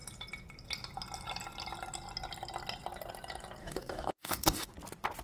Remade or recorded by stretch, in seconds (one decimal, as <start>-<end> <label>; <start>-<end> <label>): 0.0-3.6 recorded; 3.6-4.7 remade; 4.7-5.2 recorded